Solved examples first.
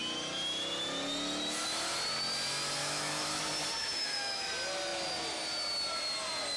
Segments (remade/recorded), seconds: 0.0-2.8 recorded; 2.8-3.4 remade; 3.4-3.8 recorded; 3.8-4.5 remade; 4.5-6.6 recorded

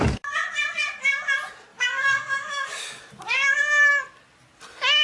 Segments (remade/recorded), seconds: 0.0-1.7 recorded; 1.7-3.1 remade; 3.1-5.0 recorded

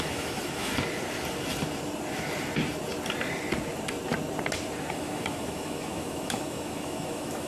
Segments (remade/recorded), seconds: 0.0-0.7 remade; 0.7-4.9 recorded; 4.9-7.5 remade

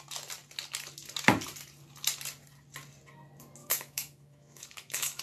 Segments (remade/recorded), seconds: 0.0-3.6 recorded; 3.6-5.2 remade

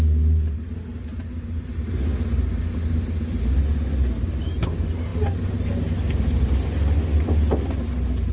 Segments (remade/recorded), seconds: 0.0-8.3 recorded

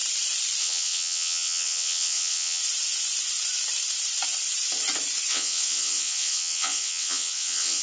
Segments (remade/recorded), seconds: 0.0-0.6 recorded; 0.6-2.6 remade; 2.6-5.3 recorded; 5.3-7.8 remade